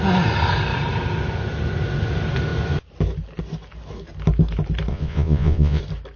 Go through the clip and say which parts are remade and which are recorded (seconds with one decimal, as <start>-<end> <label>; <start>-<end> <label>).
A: 0.0-4.9 recorded; 4.9-5.8 remade; 5.8-6.2 recorded